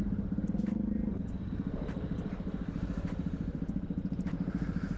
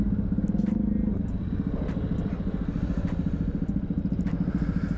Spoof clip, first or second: first